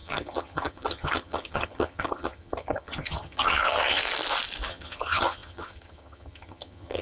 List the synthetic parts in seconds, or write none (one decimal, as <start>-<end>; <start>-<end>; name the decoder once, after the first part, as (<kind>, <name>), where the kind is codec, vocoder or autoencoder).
0.0-4.0 (vocoder, HiFi-GAN); 4.7-7.0

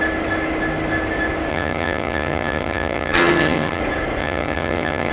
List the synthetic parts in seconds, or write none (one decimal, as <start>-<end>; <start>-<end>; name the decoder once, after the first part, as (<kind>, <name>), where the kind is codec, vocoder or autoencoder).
1.5-3.8 (vocoder, HiFi-GAN); 4.2-5.1

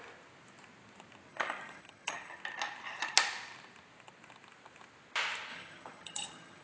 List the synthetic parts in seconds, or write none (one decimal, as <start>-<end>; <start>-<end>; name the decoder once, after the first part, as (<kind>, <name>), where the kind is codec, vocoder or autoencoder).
1.3-2.4 (vocoder, HiFi-GAN); 5.5-6.6